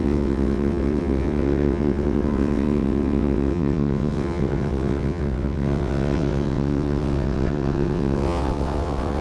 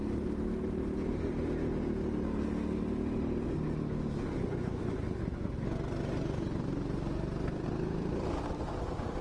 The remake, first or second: first